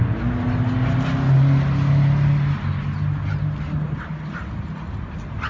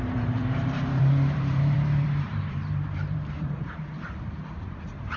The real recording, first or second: first